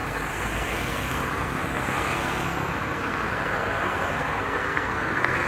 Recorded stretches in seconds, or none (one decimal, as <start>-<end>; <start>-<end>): none